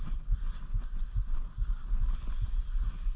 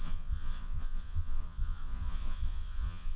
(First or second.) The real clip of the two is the first